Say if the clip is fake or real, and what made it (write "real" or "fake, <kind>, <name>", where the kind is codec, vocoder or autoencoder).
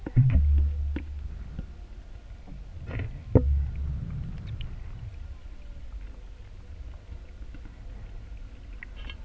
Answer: real